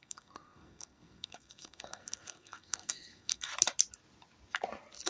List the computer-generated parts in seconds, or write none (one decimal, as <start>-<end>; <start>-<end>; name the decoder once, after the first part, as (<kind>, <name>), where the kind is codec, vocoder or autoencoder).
0.0-3.5 (codec, SNAC)